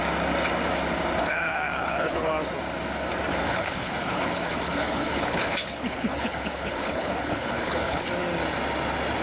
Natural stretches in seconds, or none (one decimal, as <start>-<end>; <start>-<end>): 0.0-1.2; 2.3-3.4; 8.1-9.2

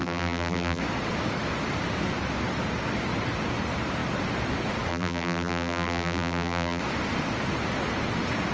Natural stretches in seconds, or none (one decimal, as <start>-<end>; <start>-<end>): 0.8-4.9; 6.8-8.5

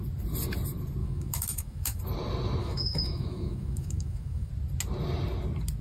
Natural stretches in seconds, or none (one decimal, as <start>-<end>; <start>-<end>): 0.0-1.0; 2.0-2.6; 4.5-5.8

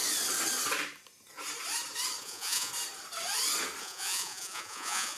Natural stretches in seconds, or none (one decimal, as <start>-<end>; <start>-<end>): 0.0-2.2; 2.7-3.8

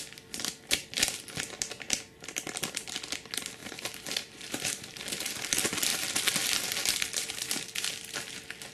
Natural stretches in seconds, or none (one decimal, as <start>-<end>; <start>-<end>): 0.0-3.6; 5.5-8.7

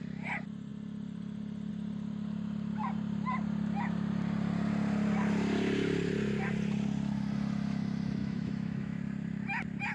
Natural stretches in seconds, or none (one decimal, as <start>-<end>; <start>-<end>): 0.0-8.2; 9.0-9.9

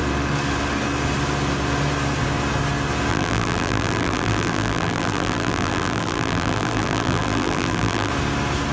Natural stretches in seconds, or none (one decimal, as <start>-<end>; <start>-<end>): 0.0-3.1; 8.1-8.7